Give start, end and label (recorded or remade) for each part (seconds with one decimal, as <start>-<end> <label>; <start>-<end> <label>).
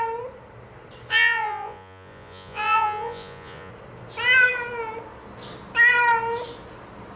0.0-1.1 recorded; 1.1-3.7 remade; 3.7-7.2 recorded